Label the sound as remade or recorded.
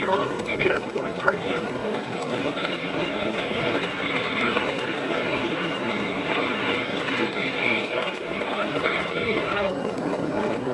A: remade